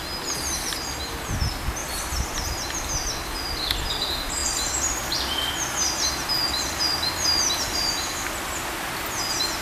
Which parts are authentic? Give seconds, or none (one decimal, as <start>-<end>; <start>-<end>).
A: 0.0-1.8; 2.9-4.4; 5.5-6.2; 7.9-9.6